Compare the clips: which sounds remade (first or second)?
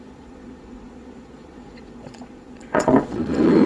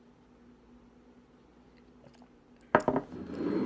first